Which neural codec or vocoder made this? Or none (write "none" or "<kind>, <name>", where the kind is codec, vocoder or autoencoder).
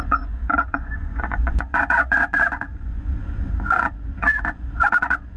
vocoder, Vocos